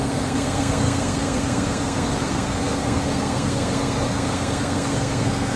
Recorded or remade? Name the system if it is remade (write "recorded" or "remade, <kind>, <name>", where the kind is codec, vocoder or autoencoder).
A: remade, codec, SNAC